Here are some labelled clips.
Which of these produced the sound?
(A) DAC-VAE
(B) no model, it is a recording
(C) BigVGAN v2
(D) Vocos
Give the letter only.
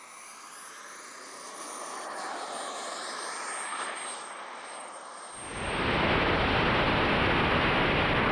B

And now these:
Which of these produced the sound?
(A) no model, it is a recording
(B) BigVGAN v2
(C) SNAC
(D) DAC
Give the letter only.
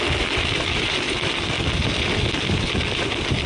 A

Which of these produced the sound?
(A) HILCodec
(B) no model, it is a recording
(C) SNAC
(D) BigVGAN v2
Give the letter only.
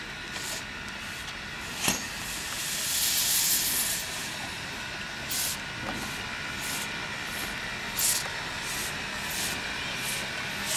B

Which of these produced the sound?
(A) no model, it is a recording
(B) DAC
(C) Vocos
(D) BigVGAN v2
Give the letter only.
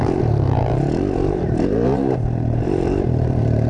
D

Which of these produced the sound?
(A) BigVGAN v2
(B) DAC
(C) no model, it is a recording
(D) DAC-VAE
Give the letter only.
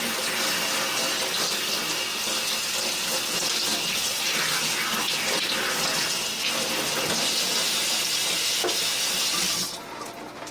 C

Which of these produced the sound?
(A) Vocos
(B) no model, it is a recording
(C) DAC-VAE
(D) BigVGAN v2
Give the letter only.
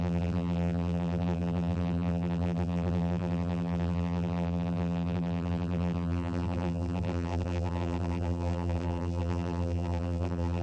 D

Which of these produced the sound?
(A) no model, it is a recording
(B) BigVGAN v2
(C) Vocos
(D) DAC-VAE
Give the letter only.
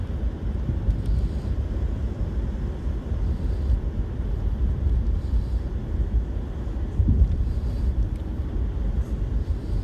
B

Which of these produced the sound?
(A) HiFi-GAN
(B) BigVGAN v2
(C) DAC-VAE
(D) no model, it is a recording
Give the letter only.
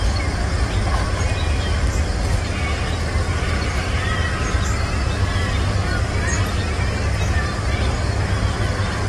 D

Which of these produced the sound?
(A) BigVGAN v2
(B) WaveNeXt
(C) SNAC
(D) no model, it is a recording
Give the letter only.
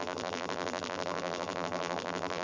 A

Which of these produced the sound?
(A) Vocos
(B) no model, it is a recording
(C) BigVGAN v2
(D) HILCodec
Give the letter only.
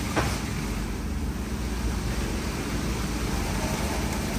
B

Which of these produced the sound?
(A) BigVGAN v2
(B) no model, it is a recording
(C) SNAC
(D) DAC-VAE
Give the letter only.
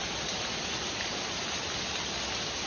B